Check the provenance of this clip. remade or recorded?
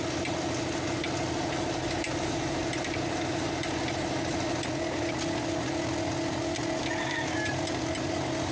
recorded